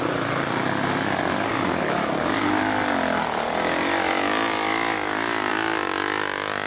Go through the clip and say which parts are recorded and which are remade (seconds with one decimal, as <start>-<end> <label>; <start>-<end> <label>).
0.0-6.7 recorded